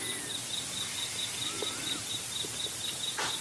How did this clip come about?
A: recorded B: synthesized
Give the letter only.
A